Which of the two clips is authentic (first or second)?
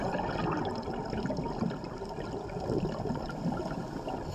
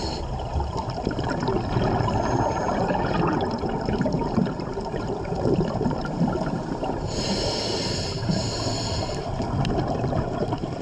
first